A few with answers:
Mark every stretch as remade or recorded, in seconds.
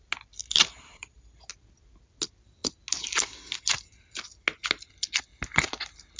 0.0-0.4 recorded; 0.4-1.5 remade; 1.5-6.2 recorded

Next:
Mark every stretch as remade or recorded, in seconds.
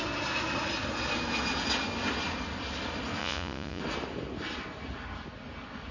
0.0-3.2 recorded; 3.2-3.8 remade; 3.8-5.9 recorded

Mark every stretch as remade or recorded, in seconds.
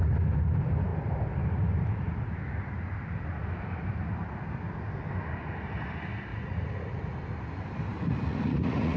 0.0-6.3 recorded; 6.3-7.0 remade; 7.0-7.9 recorded; 7.9-9.0 remade